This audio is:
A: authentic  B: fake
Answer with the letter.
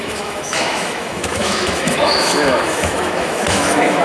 B